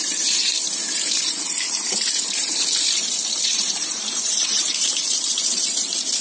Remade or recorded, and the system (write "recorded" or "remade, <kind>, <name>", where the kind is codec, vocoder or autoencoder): remade, vocoder, BigVGAN v2